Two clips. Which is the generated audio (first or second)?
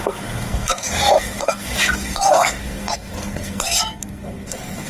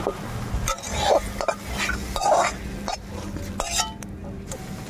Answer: first